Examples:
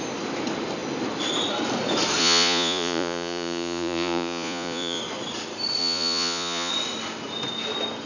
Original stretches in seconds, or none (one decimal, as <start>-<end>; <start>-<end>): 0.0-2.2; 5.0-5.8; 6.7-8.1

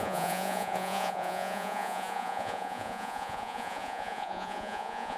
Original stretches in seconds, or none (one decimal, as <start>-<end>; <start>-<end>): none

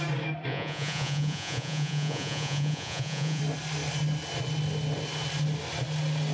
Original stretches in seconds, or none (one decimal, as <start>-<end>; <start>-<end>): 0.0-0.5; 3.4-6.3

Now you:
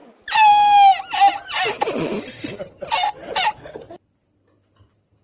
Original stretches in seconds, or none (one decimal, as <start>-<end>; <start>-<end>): 0.0-5.2

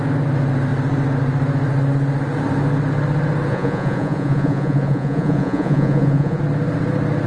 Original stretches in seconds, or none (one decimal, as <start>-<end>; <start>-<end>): 0.0-3.5; 6.4-7.3

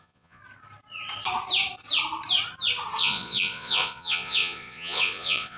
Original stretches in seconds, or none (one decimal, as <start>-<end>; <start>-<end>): 0.4-3.0

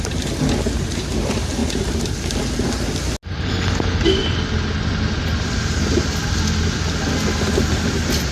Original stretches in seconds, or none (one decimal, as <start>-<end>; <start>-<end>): 0.0-8.3

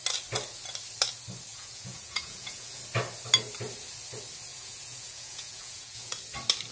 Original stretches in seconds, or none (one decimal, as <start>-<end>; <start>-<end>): 0.0-1.5; 2.8-4.5; 6.2-6.7